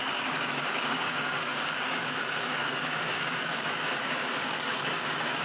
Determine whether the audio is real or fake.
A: fake